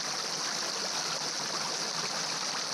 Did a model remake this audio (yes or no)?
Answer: no